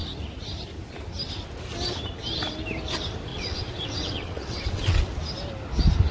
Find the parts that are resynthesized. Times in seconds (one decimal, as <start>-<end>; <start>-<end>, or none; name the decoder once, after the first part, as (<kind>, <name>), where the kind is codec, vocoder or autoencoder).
3.3-5.1 (vocoder, WaveNeXt)